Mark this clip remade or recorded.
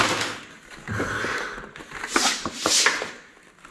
recorded